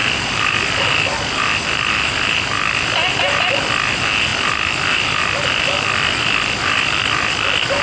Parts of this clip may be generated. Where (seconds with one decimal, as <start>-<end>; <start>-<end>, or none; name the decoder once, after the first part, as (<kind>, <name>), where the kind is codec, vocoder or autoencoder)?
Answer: none

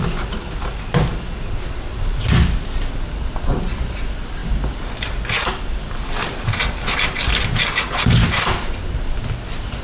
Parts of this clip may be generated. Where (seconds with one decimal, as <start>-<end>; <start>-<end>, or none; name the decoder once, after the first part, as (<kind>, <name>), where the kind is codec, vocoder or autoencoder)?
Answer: none